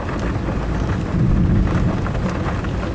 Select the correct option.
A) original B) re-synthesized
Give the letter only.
A